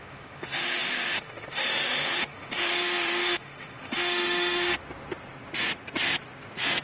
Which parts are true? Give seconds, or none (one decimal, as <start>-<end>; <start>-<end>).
4.7-6.8